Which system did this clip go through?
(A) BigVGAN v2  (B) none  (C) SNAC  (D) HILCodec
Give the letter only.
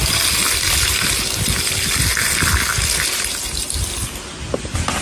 B